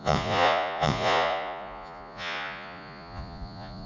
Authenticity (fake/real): fake